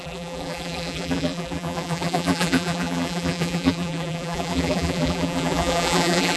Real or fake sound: fake